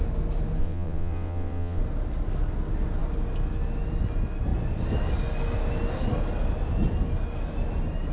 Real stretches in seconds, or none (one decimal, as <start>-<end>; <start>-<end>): 0.0-0.6; 1.8-8.1